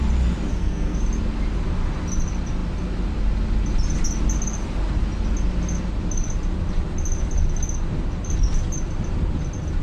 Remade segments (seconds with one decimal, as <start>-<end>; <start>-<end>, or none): 0.5-1.0